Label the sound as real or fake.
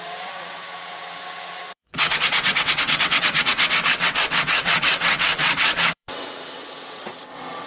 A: fake